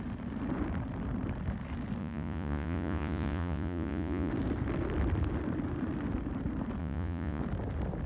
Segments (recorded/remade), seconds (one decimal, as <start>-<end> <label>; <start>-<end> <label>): 0.0-2.0 recorded; 2.0-4.3 remade; 4.3-6.8 recorded; 6.8-7.4 remade; 7.4-8.1 recorded